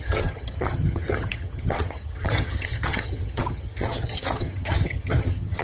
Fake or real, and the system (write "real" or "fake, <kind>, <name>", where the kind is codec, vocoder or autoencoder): fake, vocoder, HiFi-GAN